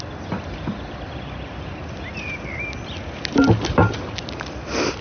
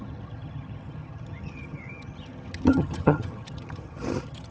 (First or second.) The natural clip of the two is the first